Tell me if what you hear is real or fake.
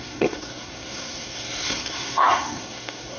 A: fake